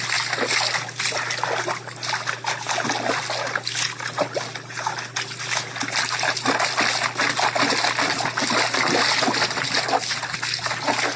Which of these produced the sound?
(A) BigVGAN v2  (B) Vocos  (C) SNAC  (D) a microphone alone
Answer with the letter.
D